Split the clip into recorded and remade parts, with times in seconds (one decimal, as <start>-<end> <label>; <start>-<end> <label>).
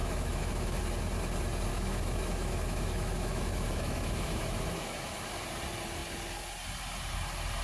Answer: 0.0-0.8 remade; 0.8-1.7 recorded; 1.7-5.3 remade; 5.3-7.6 recorded